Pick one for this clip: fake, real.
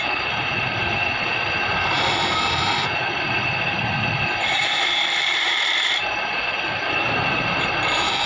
fake